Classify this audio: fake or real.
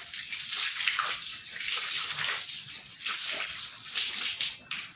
real